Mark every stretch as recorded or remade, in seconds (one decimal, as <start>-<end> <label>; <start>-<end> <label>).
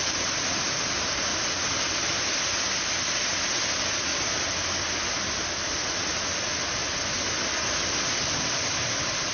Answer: 0.0-9.3 recorded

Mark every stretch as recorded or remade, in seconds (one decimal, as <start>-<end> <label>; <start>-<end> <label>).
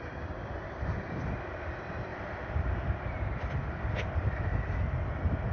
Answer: 0.0-2.1 remade; 2.1-2.8 recorded; 2.8-4.5 remade; 4.5-5.5 recorded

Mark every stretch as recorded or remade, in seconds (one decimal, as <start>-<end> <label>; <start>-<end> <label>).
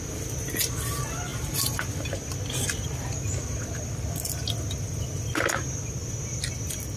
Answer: 0.0-6.0 recorded; 6.0-7.0 remade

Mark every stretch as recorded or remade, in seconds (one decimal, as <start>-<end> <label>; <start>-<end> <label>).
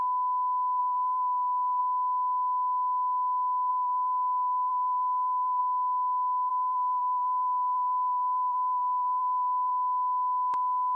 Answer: 0.0-0.8 recorded; 0.8-1.8 remade; 1.8-3.7 recorded; 3.7-5.6 remade; 5.6-6.5 recorded; 6.5-9.7 remade; 9.7-11.0 recorded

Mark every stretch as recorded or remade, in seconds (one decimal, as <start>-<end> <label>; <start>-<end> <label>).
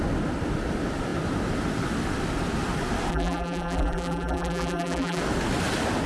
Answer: 0.0-3.1 recorded; 3.1-5.2 remade; 5.2-6.1 recorded